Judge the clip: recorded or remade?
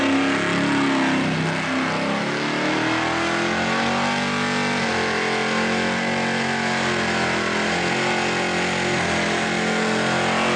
recorded